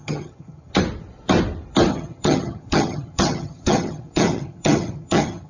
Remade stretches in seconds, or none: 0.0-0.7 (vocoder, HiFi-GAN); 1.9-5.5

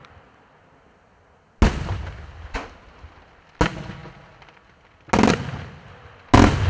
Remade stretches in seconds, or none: none